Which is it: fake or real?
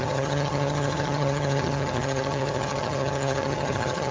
fake